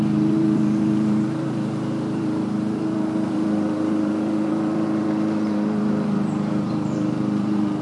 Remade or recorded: remade